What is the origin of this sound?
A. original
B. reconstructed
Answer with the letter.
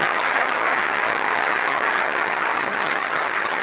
B